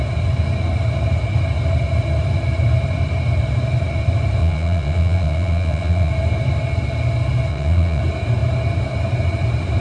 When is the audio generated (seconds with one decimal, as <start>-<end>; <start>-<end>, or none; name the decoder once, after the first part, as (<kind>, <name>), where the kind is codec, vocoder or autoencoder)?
4.4-6.1 (vocoder, Vocos); 7.5-8.0